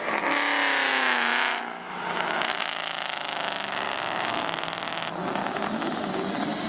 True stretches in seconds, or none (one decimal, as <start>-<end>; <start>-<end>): 0.0-0.9; 4.4-5.4; 6.0-6.7